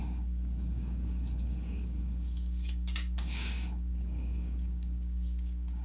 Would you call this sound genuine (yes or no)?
no